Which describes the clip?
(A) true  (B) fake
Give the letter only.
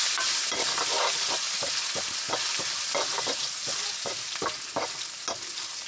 A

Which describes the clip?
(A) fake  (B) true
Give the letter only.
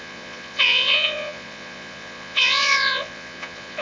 A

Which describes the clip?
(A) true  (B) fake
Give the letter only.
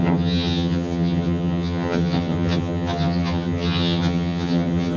B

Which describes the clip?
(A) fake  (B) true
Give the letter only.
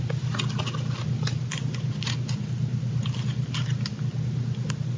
B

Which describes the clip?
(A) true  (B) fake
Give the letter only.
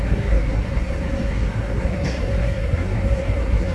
B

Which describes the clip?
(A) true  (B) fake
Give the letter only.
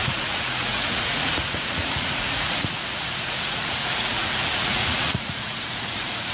B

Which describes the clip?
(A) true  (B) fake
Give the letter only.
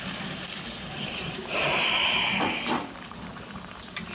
B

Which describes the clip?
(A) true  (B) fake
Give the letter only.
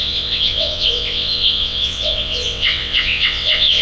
B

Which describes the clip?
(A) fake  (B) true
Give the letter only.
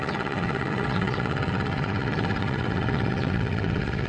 A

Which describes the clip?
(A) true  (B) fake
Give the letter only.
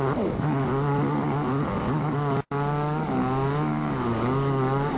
B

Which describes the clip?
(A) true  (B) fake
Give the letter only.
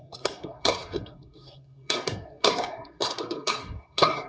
B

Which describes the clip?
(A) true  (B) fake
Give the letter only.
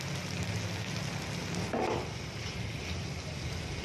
A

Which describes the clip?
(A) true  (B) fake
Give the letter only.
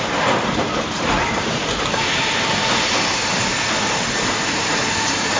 B